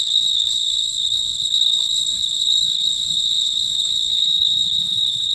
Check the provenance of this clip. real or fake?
fake